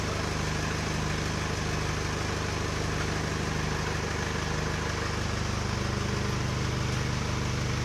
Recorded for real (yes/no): yes